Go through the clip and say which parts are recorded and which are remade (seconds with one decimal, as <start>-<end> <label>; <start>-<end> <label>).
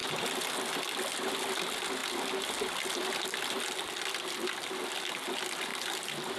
0.0-0.5 remade; 0.5-5.7 recorded; 5.7-6.4 remade